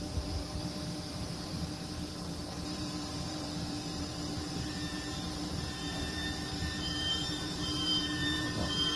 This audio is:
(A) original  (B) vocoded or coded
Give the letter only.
B